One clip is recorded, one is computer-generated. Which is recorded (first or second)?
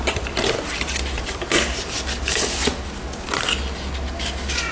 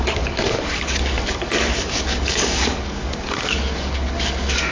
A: first